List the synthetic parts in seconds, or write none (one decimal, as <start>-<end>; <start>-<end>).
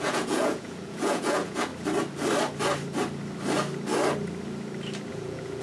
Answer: 0.0-1.7; 5.1-5.6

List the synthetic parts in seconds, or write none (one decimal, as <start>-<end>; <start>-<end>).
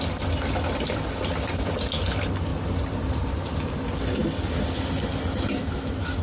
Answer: 2.5-3.8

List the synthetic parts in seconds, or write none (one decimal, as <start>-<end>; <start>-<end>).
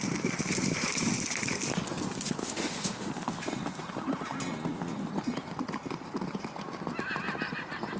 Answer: 2.4-3.1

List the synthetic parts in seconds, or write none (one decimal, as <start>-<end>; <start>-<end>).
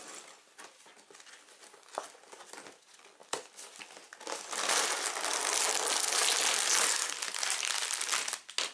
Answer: none